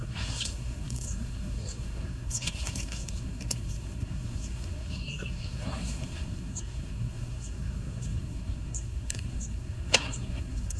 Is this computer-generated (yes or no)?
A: yes